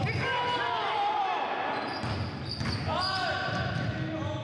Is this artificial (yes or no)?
no